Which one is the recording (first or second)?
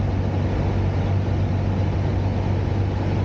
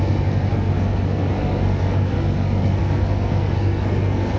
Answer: first